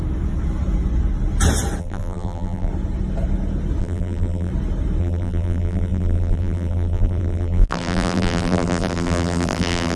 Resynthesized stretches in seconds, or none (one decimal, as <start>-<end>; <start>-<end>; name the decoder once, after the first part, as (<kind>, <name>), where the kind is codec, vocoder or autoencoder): 1.8-2.7 (vocoder, BigVGAN v2); 3.8-4.5; 5.0-10.0